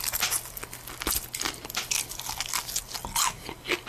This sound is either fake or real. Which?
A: real